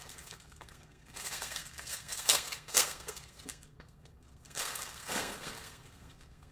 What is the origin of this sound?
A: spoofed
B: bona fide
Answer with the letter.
A